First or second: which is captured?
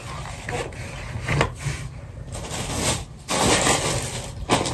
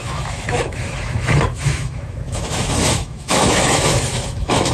first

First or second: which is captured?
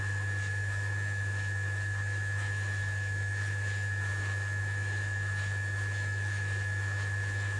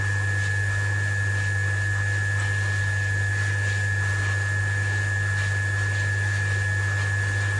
second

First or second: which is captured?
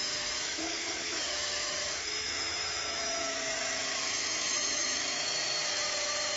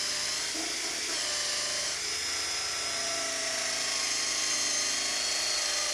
second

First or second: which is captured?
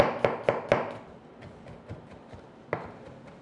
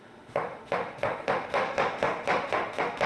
first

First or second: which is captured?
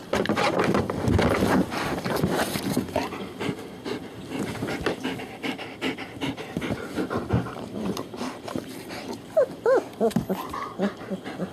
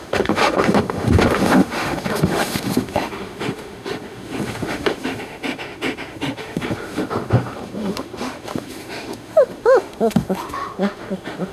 first